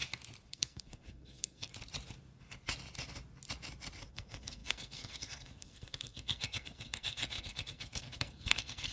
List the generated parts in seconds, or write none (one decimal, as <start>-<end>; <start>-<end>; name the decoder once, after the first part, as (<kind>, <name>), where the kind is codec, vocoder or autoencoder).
0.5-1.7 (codec, SNAC); 4.1-8.9